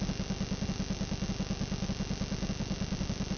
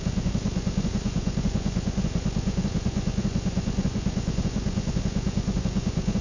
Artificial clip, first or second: second